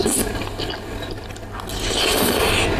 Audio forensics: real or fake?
real